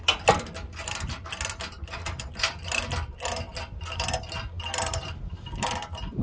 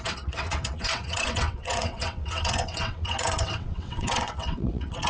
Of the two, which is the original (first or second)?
first